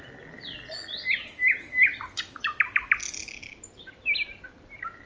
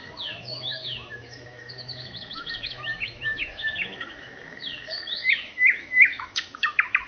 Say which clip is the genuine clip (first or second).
first